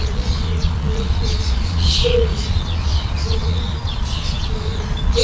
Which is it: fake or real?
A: fake